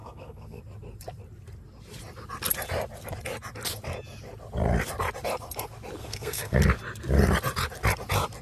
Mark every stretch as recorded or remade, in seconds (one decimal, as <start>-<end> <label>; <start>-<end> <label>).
0.0-0.6 remade; 0.6-6.0 recorded; 6.0-6.6 remade; 6.6-8.4 recorded